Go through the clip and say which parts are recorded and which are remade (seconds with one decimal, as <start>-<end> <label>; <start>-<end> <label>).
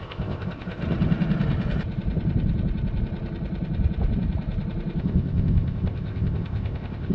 0.0-0.8 remade; 0.8-5.0 recorded; 5.0-7.1 remade